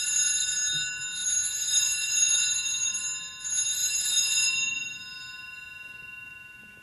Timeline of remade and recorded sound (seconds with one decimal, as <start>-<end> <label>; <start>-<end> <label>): 0.0-1.2 recorded; 1.2-2.9 remade; 2.9-3.8 recorded; 3.8-4.5 remade; 4.5-6.8 recorded

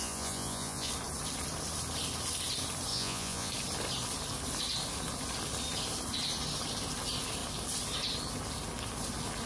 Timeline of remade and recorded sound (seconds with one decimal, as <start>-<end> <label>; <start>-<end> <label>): 0.0-0.9 remade; 0.9-2.9 recorded; 2.9-3.5 remade; 3.5-9.5 recorded

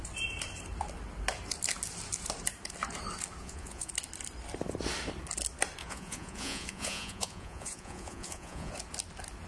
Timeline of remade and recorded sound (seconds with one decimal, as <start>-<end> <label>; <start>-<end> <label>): 0.0-3.4 recorded; 3.4-3.9 remade; 3.9-5.8 recorded; 5.8-8.7 remade; 8.7-9.5 recorded

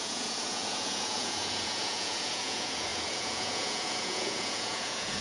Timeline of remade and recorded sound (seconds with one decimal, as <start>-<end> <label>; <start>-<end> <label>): 0.0-5.2 remade